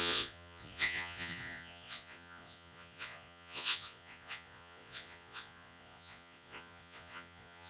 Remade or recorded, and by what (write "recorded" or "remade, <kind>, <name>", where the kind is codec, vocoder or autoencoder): remade, vocoder, Vocos